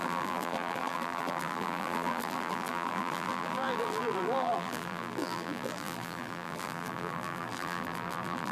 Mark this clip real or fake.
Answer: fake